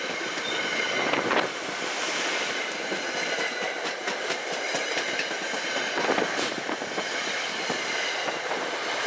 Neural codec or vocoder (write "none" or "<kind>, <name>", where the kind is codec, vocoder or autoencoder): none